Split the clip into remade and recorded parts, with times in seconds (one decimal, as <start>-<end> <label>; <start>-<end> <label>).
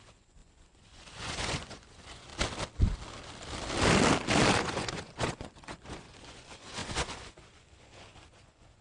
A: 0.0-2.3 remade; 2.3-4.6 recorded; 4.6-8.8 remade